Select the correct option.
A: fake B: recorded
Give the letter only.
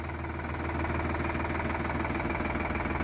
B